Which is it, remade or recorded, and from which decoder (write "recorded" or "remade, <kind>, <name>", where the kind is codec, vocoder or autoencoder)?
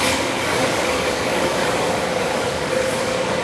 remade, codec, DAC